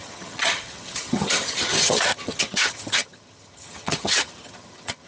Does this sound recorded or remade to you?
remade